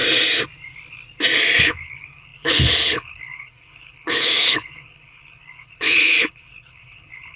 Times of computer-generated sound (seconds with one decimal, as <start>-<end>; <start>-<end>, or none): 1.6-7.4